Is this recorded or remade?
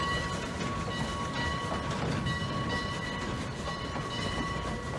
recorded